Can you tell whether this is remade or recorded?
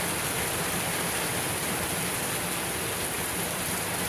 remade